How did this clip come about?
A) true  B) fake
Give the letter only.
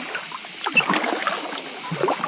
A